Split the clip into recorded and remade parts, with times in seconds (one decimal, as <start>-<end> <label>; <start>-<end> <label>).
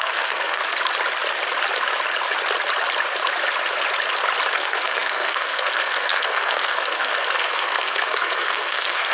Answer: 0.0-0.6 remade; 0.6-4.5 recorded; 4.5-9.1 remade